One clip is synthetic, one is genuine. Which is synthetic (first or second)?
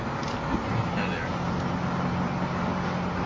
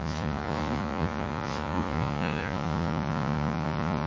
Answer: second